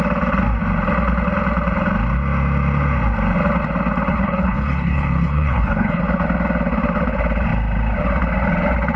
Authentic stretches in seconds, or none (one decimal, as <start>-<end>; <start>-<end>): 0.0-4.1; 6.0-9.0